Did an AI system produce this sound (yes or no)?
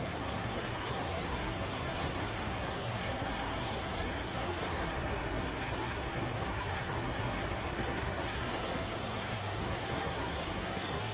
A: yes